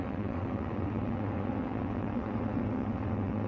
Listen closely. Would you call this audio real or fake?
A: fake